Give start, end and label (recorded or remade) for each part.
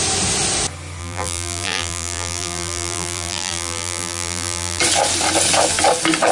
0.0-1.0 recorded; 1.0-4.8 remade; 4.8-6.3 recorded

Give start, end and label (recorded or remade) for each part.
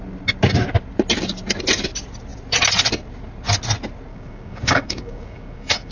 0.0-4.1 recorded; 4.1-5.9 remade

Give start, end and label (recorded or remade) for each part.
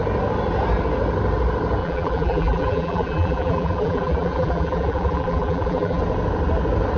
0.0-1.8 recorded; 1.8-6.0 remade; 6.0-7.0 recorded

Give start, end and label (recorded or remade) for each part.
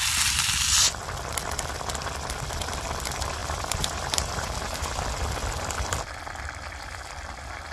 0.0-3.4 recorded; 3.4-5.0 remade; 5.0-7.7 recorded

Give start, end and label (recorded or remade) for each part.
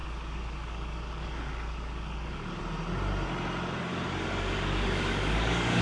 0.0-2.6 remade; 2.6-3.9 recorded; 3.9-5.8 remade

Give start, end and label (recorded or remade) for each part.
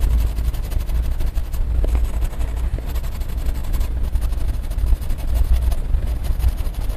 0.0-7.0 recorded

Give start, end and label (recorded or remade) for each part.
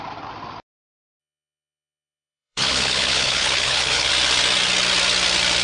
0.0-1.2 recorded; 1.2-4.1 remade; 4.1-5.6 recorded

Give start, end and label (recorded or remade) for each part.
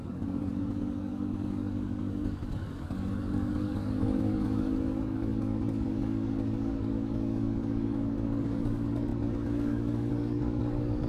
0.0-11.1 remade